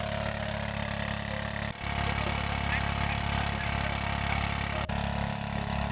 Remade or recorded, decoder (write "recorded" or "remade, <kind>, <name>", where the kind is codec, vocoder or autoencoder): recorded